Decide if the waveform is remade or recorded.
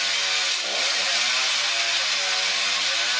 recorded